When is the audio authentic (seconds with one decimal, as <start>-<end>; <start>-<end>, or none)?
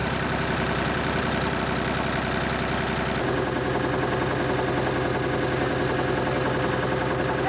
1.6-7.5